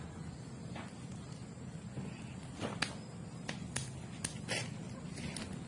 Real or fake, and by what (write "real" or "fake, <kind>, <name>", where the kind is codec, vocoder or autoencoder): real